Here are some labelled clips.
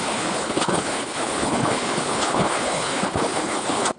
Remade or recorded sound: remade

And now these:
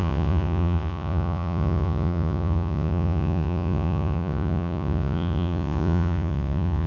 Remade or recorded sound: remade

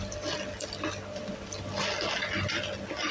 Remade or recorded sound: recorded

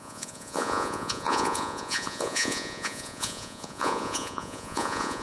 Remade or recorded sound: remade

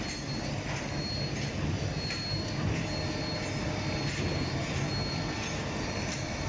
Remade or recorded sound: recorded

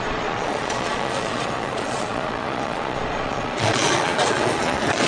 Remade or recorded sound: remade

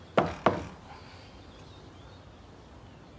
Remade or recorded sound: recorded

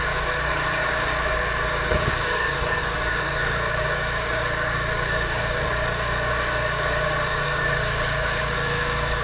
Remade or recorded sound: remade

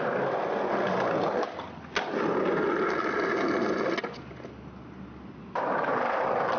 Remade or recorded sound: recorded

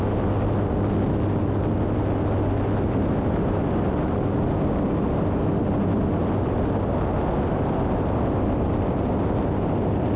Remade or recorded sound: recorded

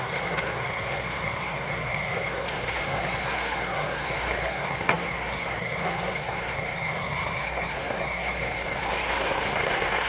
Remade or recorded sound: remade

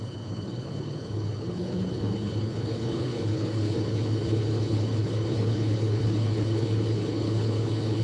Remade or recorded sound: remade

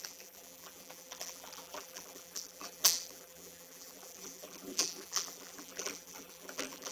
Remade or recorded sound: remade